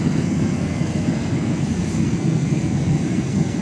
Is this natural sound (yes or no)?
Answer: no